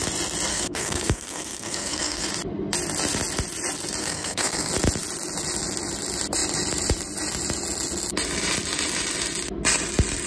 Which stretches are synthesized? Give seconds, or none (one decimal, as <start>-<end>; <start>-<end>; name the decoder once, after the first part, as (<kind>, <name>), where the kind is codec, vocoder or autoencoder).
0.5-2.3 (codec, SNAC); 4.0-4.7